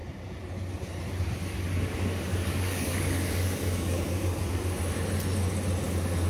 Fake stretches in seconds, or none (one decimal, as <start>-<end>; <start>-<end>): 2.3-4.4